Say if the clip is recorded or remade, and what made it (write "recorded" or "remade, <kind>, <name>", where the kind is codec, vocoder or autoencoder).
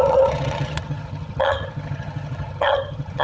remade, vocoder, HiFi-GAN